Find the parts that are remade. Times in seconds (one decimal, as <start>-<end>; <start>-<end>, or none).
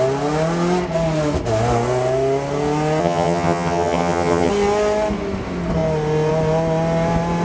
3.0-4.5